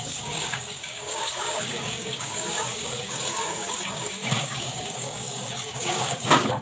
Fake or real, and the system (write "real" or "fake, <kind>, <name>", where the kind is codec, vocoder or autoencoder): fake, codec, DAC